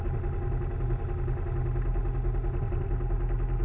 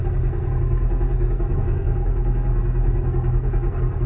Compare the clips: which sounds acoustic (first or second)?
first